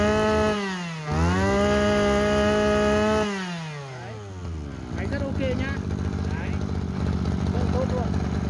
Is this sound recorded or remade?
recorded